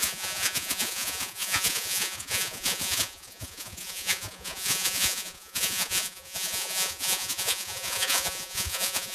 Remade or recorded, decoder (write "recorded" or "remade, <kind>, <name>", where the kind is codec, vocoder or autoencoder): remade, vocoder, Vocos